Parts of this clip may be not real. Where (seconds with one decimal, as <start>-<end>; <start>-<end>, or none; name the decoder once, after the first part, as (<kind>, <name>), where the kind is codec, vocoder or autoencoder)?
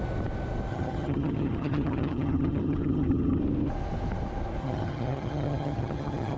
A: 0.7-3.4 (vocoder, HiFi-GAN); 4.6-6.4